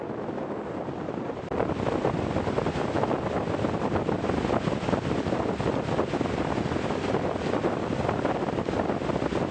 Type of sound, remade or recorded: recorded